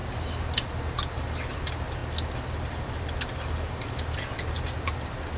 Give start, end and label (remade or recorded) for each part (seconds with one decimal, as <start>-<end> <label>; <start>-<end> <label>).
0.0-5.4 recorded